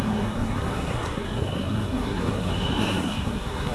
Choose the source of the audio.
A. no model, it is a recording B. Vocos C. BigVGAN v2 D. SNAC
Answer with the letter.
D